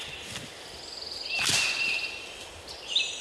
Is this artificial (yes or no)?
no